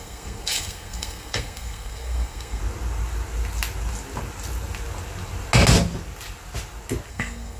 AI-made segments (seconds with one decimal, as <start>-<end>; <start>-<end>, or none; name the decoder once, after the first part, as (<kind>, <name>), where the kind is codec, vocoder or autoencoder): 0.0-2.6 (codec, SNAC); 7.1-7.6

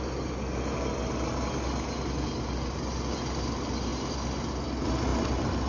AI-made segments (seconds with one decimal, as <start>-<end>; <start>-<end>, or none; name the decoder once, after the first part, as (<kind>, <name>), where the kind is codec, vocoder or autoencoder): none